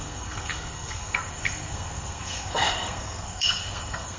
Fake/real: fake